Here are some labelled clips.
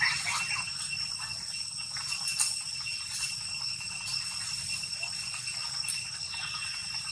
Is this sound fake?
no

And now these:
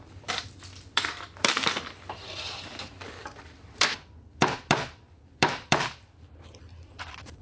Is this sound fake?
yes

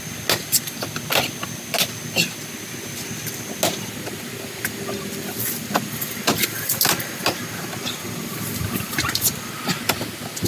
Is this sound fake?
no